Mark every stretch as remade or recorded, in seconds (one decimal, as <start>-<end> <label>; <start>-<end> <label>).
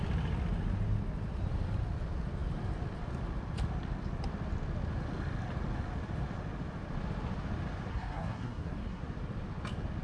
0.0-7.9 recorded; 7.9-9.0 remade; 9.0-10.0 recorded